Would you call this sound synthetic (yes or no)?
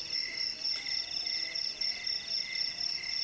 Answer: no